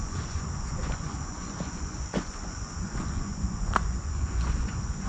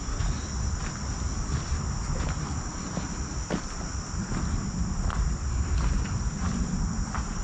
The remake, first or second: first